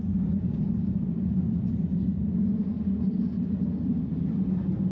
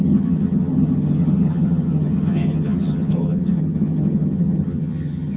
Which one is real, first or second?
first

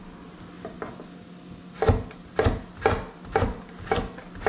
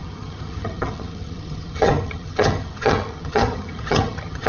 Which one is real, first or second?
first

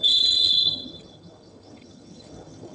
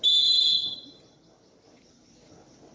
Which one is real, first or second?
second